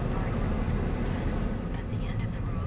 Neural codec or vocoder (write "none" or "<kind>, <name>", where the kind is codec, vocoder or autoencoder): none